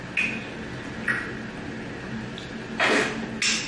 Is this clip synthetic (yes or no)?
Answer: no